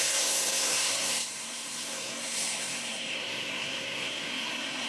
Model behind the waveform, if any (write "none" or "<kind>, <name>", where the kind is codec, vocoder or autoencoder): codec, SNAC